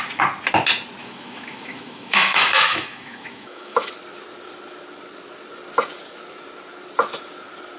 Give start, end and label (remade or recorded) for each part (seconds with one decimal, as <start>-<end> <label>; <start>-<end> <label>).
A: 0.0-1.0 recorded; 1.0-3.9 remade; 3.9-7.8 recorded

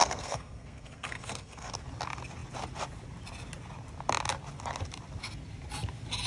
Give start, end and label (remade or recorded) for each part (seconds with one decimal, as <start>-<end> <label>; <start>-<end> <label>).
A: 0.0-1.7 remade; 1.7-6.3 recorded